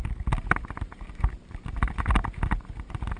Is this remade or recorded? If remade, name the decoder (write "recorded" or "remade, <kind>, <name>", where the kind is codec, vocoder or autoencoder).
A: recorded